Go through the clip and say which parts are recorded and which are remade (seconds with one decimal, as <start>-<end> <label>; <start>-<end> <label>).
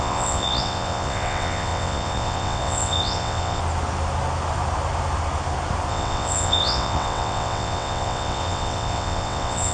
0.0-3.6 remade; 3.6-5.9 recorded; 5.9-9.7 remade